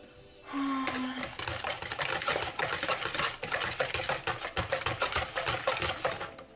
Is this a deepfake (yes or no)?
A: no